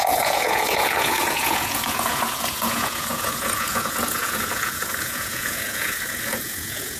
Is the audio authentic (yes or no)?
no